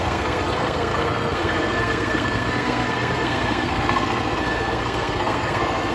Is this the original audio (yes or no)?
no